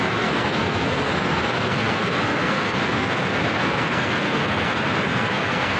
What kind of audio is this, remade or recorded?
remade